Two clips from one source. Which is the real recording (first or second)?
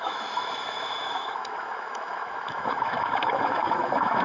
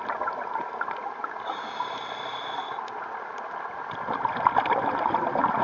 second